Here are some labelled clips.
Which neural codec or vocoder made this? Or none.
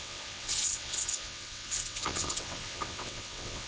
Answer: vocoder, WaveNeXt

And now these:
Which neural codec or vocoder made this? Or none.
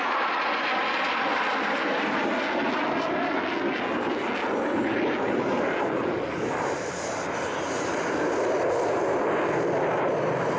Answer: none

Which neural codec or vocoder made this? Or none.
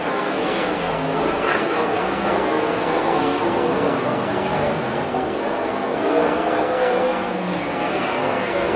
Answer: codec, SNAC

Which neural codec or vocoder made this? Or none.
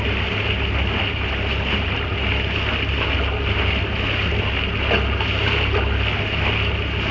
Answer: none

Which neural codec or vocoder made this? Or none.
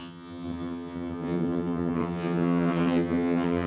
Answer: vocoder, HiFi-GAN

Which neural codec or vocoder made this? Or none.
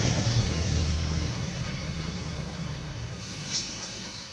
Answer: codec, SNAC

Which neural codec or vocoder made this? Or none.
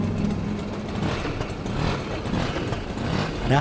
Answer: none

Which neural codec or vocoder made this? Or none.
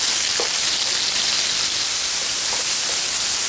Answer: none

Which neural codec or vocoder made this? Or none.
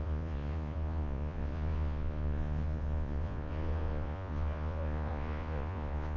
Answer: vocoder, Vocos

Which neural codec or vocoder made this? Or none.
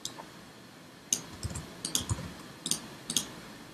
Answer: none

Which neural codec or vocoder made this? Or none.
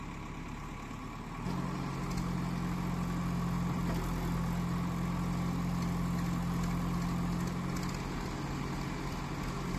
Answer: none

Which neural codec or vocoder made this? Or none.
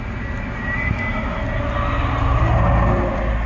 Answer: none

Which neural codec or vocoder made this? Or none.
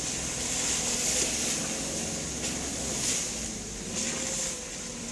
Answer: none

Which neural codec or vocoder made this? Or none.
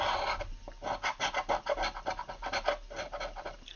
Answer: none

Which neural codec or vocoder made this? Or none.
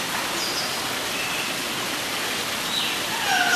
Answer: vocoder, BigVGAN v2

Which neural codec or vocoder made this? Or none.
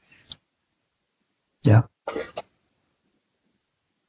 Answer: none